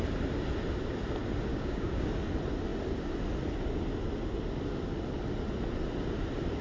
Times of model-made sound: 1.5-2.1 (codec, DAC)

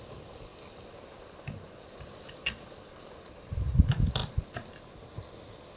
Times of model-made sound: none